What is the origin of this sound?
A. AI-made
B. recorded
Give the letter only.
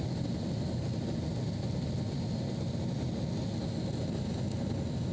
B